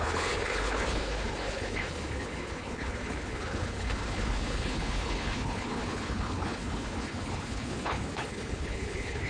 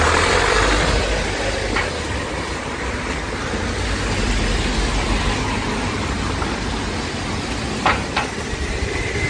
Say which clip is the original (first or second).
second